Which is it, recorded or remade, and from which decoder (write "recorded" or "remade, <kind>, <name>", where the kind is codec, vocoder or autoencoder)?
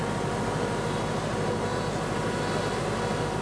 recorded